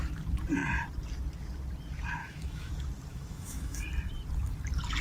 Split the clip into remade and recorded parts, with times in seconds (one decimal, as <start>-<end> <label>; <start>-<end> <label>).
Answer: 0.0-2.2 recorded; 2.2-2.7 remade; 2.7-3.1 recorded; 3.1-3.9 remade; 3.9-5.0 recorded